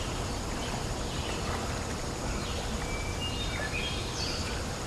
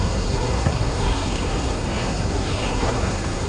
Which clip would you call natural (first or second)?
first